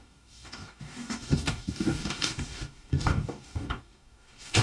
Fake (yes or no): yes